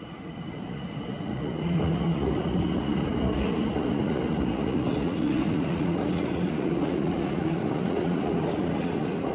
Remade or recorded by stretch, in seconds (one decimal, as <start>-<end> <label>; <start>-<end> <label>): 0.0-9.3 remade